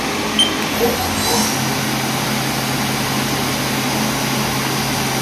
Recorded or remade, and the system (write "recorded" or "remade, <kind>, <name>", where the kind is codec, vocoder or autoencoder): recorded